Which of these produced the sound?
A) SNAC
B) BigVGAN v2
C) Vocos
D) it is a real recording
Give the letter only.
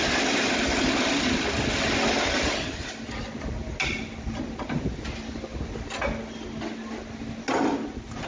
D